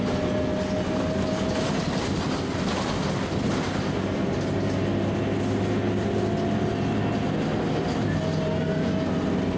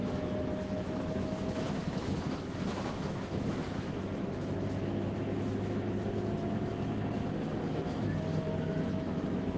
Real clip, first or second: first